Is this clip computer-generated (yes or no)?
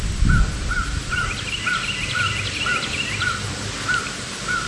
yes